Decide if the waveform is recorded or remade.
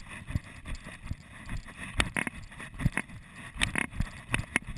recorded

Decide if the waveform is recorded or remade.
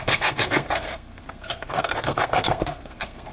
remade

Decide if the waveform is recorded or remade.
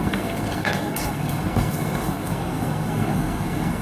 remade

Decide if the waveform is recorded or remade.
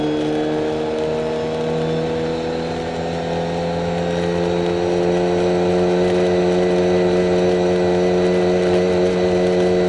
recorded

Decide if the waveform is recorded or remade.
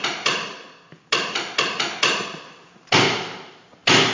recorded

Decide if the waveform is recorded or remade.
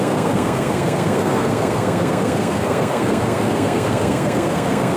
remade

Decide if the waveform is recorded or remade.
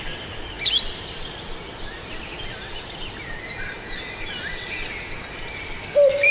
recorded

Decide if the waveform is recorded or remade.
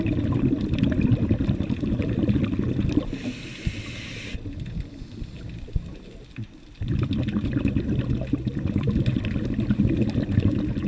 recorded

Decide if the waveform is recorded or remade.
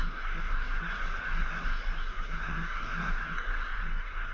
remade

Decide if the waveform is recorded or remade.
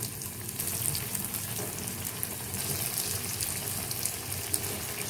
recorded